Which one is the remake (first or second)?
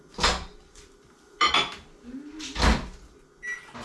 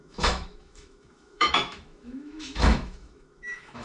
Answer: second